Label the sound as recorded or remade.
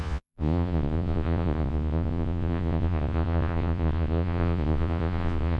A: remade